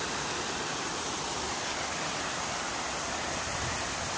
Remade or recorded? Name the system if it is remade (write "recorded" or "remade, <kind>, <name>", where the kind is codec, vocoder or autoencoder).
remade, vocoder, BigVGAN v2